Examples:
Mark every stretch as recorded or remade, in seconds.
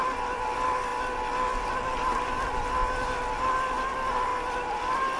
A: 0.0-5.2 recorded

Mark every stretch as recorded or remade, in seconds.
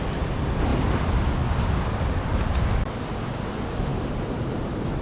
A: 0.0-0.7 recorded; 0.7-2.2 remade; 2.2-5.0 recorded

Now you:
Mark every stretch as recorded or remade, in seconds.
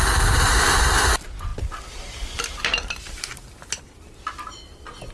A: 0.0-2.7 recorded; 2.7-3.8 remade; 3.8-5.1 recorded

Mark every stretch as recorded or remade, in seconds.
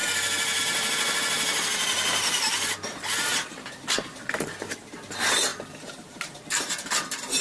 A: 0.0-5.5 recorded; 5.5-6.3 remade; 6.3-7.4 recorded